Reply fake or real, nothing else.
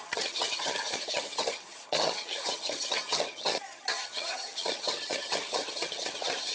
fake